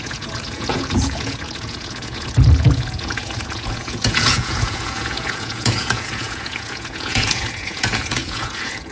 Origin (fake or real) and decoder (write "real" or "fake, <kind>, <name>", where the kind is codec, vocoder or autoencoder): fake, vocoder, Vocos